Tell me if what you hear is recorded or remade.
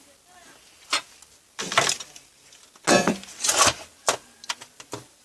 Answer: recorded